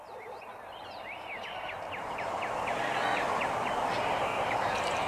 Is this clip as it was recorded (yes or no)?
no